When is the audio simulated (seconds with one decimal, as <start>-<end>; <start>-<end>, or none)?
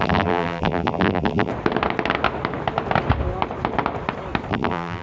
0.0-1.5; 4.5-5.0